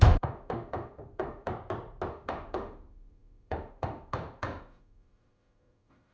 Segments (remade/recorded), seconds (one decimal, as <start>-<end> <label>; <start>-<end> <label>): 0.0-1.5 remade; 1.5-2.1 recorded; 2.1-6.1 remade